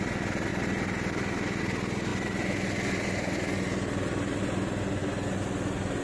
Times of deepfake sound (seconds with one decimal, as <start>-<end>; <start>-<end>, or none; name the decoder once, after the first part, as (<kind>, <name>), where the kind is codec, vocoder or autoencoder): 0.5-1.6 (vocoder, BigVGAN v2)